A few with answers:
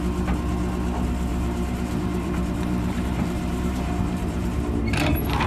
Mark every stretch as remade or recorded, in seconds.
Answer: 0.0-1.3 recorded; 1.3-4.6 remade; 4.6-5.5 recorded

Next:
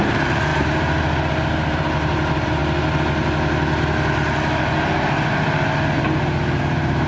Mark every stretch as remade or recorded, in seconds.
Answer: 0.0-2.6 remade; 2.6-6.6 recorded; 6.6-7.1 remade

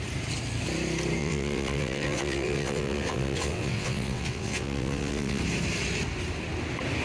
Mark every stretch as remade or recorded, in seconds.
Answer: 0.0-1.2 recorded; 1.2-5.4 remade; 5.4-7.0 recorded

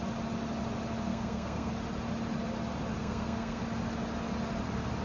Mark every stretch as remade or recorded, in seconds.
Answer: 0.0-1.1 recorded; 1.1-1.7 remade; 1.7-3.0 recorded; 3.0-3.6 remade; 3.6-5.0 recorded

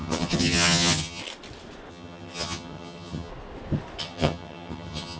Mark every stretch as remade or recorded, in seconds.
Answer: 0.0-1.2 remade; 1.2-1.9 recorded; 1.9-3.3 remade; 3.3-4.0 recorded; 4.0-5.2 remade

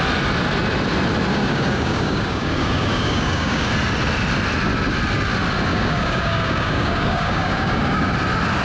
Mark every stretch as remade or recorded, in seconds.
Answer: 0.0-1.3 recorded; 1.3-3.7 remade; 3.7-5.7 recorded; 5.7-8.1 remade; 8.1-8.6 recorded